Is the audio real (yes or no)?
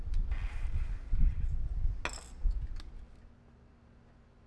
yes